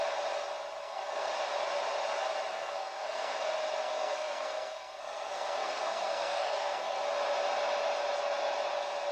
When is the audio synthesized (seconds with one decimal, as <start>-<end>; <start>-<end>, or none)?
0.8-1.3; 2.5-3.4; 3.8-7.0